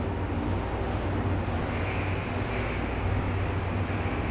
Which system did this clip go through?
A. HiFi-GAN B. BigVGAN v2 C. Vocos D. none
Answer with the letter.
D